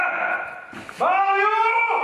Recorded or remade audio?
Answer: recorded